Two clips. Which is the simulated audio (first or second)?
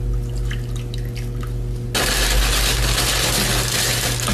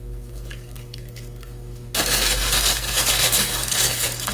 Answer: second